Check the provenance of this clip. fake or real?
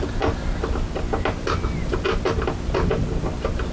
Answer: real